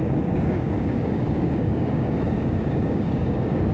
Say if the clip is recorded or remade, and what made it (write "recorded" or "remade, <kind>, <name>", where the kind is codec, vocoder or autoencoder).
remade, codec, DAC